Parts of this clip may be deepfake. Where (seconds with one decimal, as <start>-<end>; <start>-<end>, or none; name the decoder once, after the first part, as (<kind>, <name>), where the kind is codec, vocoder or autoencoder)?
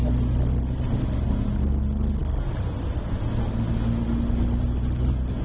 none